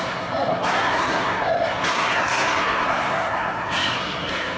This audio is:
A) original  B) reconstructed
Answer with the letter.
B